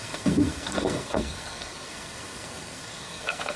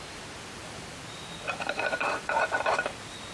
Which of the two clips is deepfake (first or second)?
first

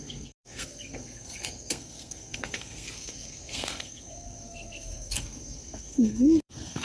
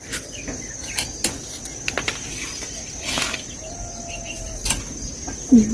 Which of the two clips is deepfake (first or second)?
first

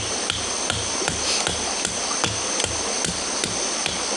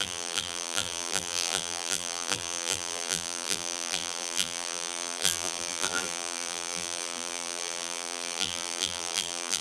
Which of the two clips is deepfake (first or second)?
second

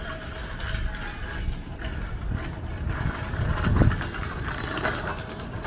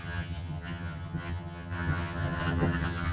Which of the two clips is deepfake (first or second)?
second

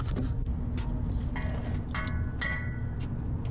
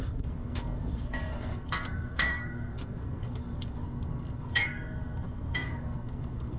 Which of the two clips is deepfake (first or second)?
second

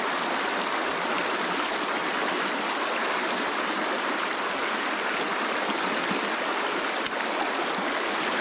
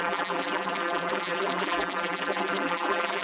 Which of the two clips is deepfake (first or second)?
second